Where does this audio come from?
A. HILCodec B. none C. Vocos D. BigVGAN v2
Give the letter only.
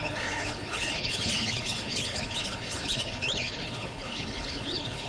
A